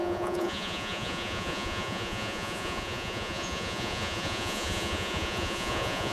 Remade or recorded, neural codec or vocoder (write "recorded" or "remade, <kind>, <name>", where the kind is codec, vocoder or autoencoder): remade, vocoder, Vocos